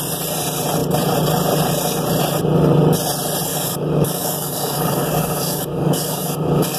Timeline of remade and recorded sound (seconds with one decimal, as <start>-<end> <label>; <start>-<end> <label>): 0.0-3.5 recorded; 3.5-6.8 remade